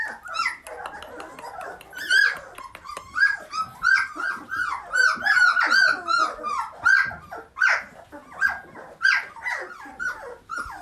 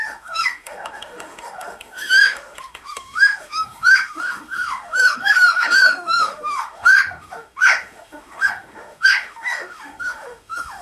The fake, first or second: second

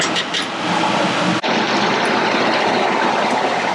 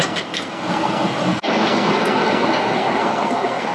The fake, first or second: second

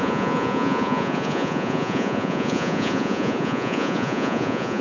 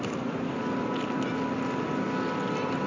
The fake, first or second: first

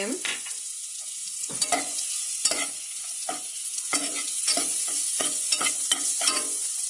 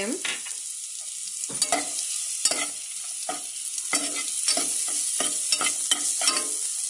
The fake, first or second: first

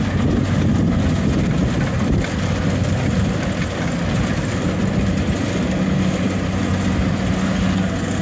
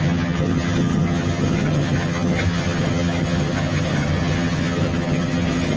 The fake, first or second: second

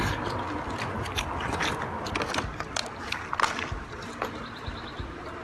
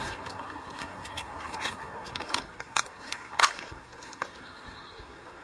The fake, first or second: second